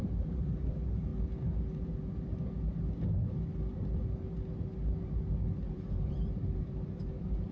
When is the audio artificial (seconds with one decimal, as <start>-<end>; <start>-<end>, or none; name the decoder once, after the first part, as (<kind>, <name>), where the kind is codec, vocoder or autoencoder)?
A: 0.0-1.1 (vocoder, BigVGAN v2); 5.6-7.5